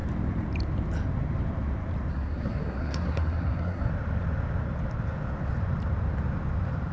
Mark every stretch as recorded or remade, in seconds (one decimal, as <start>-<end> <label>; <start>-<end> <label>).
0.0-2.1 recorded; 2.1-3.9 remade; 3.9-6.9 recorded